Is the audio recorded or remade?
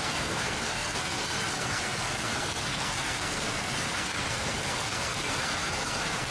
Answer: remade